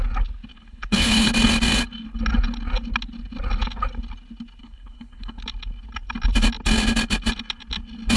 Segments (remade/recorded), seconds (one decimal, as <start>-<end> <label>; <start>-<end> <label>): 0.0-0.5 recorded; 0.5-1.3 remade; 1.3-4.6 recorded; 4.6-5.4 remade; 5.4-8.2 recorded